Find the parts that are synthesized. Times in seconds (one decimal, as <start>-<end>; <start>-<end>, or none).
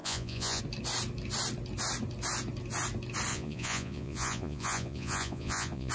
0.0-0.6; 3.3-5.9